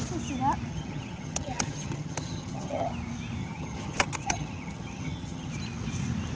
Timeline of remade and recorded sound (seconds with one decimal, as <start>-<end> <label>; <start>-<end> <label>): 0.0-0.7 recorded; 0.7-2.9 remade; 2.9-3.4 recorded; 3.4-5.5 remade; 5.5-6.4 recorded